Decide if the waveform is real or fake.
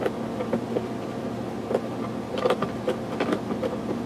real